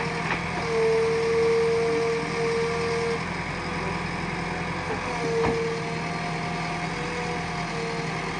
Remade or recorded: recorded